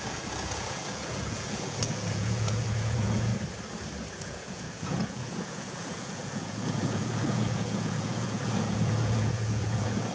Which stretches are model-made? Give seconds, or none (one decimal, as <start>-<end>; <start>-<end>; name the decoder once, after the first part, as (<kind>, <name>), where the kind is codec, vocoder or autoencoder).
0.0-3.3 (vocoder, Vocos); 4.2-10.1

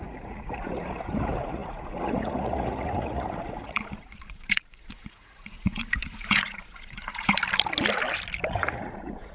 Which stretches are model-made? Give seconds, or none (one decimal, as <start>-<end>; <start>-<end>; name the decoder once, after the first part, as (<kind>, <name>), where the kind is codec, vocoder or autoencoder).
0.0-7.4 (vocoder, Vocos); 8.5-9.3

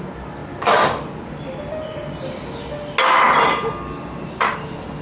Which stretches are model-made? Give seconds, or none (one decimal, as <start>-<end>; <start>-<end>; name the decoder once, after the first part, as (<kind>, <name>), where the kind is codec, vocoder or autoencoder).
none

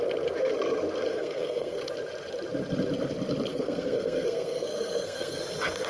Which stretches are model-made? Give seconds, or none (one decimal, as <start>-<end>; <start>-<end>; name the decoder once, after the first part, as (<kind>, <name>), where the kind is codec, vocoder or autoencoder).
1.1-1.8 (codec, SNAC); 3.5-5.4

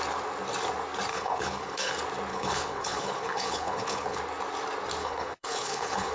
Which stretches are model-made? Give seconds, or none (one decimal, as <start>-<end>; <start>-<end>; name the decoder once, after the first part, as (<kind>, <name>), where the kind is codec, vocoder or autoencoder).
1.1-1.9 (codec, HILCodec); 2.3-4.2; 5.0-6.1

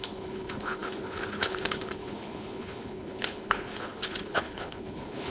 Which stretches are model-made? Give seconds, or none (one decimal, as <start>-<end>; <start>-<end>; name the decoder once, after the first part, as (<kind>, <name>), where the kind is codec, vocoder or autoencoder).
0.0-5.3 (codec, HILCodec)

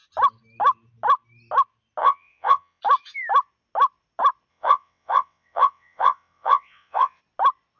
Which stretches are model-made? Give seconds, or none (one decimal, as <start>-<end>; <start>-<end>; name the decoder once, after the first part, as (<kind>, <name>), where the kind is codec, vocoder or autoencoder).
2.0-2.8 (vocoder, WaveNeXt); 4.5-7.2